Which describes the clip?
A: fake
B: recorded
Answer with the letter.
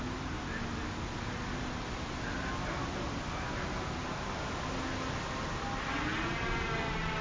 B